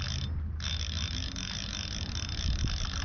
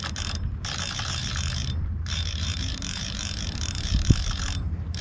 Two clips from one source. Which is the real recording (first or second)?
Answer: first